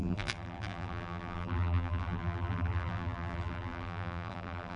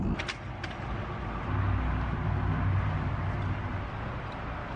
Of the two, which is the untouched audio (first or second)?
second